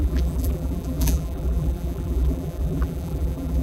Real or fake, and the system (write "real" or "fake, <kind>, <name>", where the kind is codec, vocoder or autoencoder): fake, vocoder, BigVGAN v2